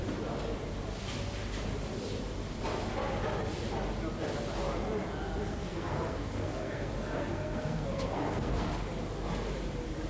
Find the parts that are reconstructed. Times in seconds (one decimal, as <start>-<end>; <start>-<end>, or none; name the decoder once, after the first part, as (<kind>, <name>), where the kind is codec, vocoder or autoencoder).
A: 5.4-8.7 (codec, SNAC)